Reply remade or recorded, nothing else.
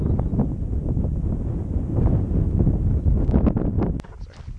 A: recorded